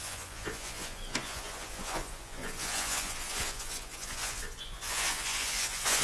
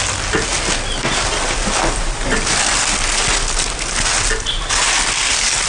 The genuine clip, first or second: second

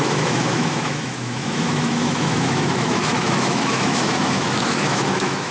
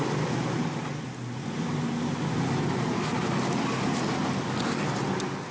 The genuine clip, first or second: second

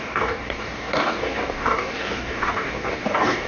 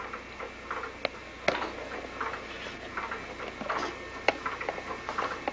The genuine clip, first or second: second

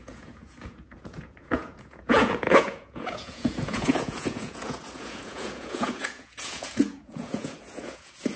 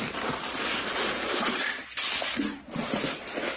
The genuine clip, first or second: second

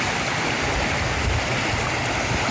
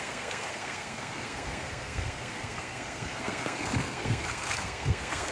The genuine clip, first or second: first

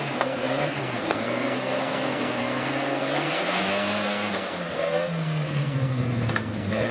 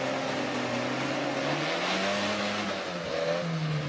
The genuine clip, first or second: second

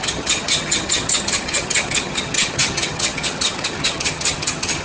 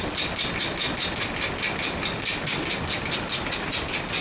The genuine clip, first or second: second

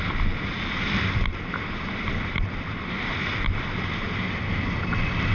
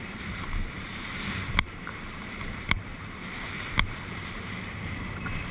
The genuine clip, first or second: first